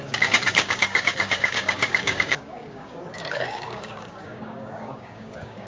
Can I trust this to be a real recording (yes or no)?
no